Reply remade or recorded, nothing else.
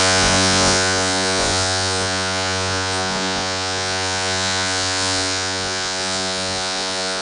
remade